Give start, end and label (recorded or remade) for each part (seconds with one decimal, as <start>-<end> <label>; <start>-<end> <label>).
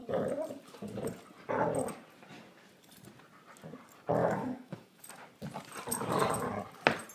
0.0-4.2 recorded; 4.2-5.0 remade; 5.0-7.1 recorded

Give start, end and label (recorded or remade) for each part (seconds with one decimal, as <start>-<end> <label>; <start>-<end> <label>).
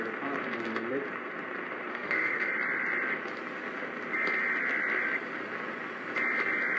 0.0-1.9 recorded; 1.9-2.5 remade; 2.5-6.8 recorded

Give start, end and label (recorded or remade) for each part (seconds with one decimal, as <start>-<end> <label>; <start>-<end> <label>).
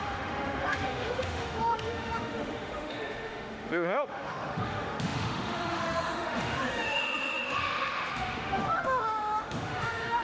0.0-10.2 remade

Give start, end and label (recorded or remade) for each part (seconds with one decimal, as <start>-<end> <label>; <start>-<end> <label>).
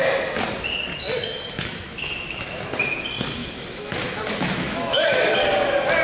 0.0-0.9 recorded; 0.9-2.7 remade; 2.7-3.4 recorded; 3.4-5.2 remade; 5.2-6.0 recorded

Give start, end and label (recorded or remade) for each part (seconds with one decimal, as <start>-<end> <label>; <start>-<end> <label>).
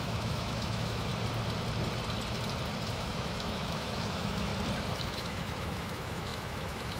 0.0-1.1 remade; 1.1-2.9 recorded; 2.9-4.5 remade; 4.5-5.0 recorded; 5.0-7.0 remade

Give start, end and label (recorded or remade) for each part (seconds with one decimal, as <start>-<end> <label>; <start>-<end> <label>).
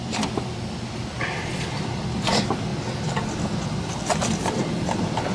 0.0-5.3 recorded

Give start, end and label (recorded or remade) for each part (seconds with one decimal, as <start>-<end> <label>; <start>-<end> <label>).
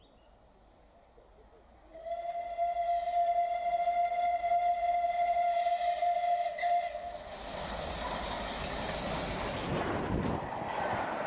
0.0-11.3 recorded